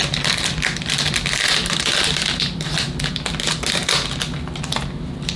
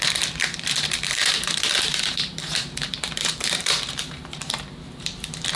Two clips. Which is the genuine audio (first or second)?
first